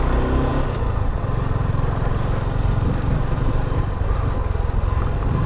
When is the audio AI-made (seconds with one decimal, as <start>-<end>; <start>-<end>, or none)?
none